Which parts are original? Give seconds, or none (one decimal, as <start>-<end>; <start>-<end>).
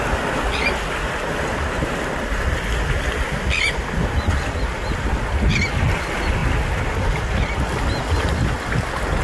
0.0-9.2